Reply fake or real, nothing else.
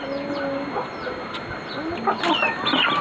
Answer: real